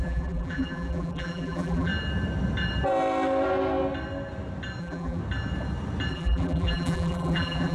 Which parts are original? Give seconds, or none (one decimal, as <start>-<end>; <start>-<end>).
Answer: 1.9-4.8; 5.2-6.1